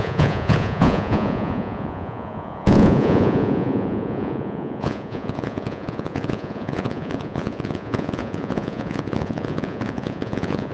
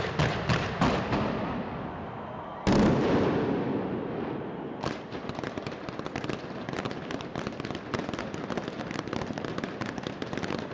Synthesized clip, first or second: first